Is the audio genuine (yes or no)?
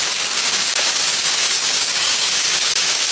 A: no